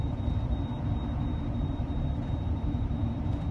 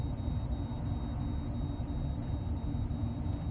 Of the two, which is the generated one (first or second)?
first